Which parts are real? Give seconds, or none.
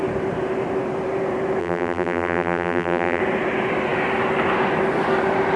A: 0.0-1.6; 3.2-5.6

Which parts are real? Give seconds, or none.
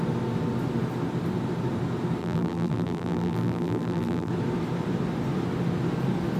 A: 0.0-2.2; 4.3-6.4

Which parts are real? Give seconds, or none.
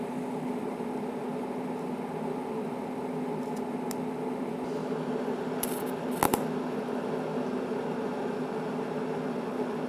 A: 0.0-9.9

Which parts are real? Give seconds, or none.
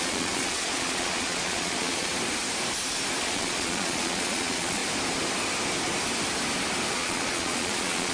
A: 2.1-3.2; 4.8-6.9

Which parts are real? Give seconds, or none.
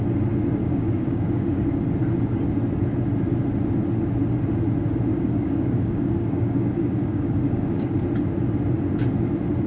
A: 0.0-0.6; 1.7-5.1; 8.0-9.7